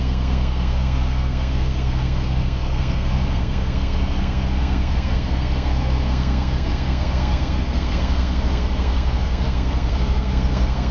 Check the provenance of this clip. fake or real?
fake